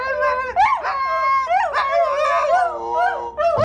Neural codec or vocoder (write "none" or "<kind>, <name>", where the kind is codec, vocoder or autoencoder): none